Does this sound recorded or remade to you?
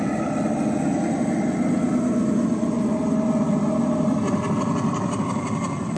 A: recorded